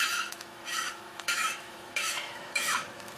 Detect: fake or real fake